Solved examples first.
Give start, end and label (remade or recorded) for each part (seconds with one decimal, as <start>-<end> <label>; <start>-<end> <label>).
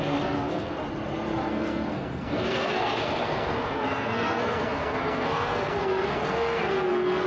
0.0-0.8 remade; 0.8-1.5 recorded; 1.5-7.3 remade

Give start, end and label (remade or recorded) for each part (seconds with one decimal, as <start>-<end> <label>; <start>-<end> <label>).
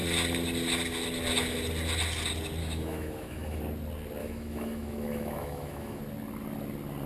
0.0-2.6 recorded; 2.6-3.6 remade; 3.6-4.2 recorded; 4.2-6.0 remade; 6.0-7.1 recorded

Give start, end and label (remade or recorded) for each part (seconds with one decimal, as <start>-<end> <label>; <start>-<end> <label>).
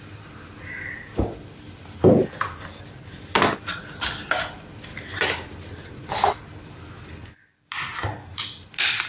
0.0-9.1 recorded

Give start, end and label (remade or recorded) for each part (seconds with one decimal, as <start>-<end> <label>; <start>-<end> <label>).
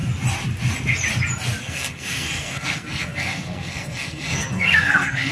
0.0-1.6 recorded; 1.6-5.3 remade